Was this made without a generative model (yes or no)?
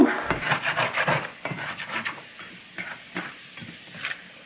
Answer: yes